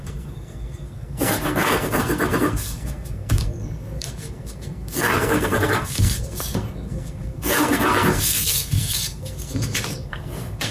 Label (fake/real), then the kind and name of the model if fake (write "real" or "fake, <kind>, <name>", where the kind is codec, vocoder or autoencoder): fake, codec, SNAC